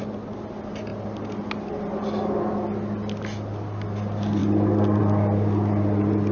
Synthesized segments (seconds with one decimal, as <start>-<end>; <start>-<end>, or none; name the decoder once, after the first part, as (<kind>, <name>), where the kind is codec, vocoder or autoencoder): none

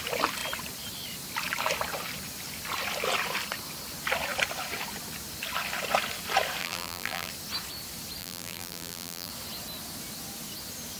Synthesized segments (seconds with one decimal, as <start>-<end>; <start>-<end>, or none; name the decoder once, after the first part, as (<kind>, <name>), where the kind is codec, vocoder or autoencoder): 6.6-7.3 (vocoder, BigVGAN v2); 8.2-9.3

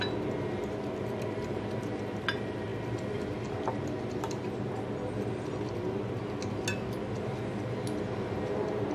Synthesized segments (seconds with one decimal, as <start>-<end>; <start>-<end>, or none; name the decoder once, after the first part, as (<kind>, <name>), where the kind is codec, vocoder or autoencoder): none

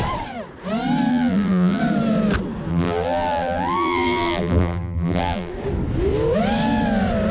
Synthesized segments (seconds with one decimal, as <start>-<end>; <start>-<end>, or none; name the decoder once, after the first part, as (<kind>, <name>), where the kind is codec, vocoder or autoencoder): 1.1-1.8 (vocoder, BigVGAN v2); 2.7-5.5

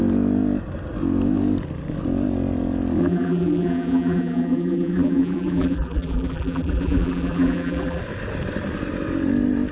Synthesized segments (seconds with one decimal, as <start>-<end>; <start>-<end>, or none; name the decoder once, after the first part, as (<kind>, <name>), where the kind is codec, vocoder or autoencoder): 3.0-8.0 (vocoder, BigVGAN v2)

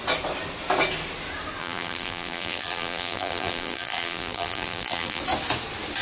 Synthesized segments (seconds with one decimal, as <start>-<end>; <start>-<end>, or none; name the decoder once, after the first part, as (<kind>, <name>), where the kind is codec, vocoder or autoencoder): 1.6-5.2 (vocoder, BigVGAN v2)

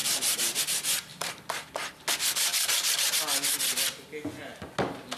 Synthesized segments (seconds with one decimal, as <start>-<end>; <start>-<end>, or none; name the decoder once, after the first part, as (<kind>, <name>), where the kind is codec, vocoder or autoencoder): 0.0-0.6 (vocoder, BigVGAN v2); 1.1-1.7; 2.5-3.1

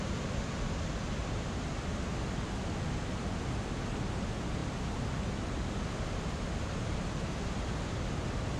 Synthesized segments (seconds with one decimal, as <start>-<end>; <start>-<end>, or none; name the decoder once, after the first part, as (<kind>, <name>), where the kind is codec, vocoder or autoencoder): 1.2-1.7 (vocoder, BigVGAN v2)